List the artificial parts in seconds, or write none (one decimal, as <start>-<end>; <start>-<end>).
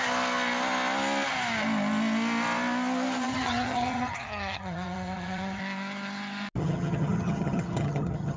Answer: 3.3-5.6; 6.6-8.4